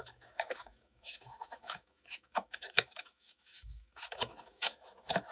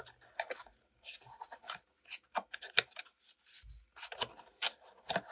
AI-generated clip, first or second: first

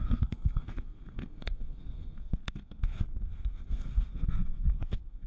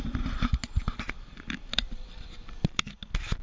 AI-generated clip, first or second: first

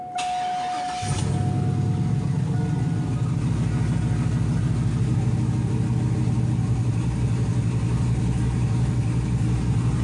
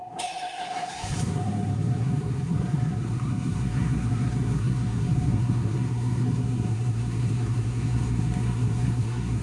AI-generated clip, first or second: second